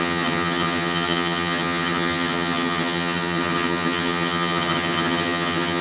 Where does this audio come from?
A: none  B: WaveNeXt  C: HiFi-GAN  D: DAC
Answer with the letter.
C